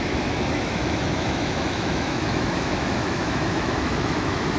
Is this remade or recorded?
remade